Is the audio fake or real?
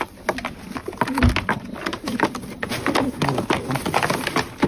real